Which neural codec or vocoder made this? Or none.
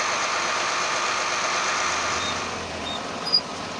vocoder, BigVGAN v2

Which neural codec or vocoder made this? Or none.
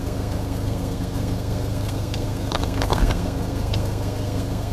codec, SNAC